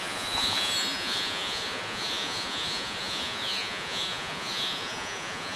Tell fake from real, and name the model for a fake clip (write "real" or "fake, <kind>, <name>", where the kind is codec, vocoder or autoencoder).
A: fake, vocoder, Vocos